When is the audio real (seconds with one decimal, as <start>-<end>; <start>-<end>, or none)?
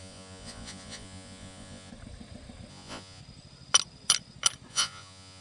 1.9-2.7; 3.2-4.7